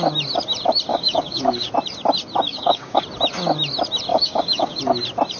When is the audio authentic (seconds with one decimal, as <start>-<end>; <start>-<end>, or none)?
0.0-0.9; 1.7-2.5; 3.0-4.1; 4.8-5.4